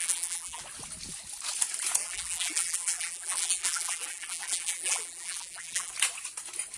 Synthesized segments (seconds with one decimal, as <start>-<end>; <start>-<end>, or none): 0.0-0.6; 2.0-5.9